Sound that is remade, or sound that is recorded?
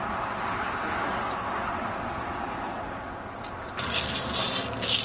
recorded